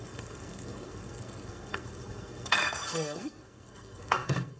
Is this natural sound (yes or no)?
no